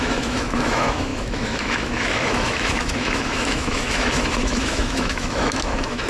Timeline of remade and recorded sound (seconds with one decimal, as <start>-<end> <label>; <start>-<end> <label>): 0.0-6.1 remade